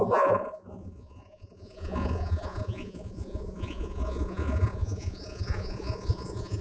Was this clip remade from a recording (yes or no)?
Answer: yes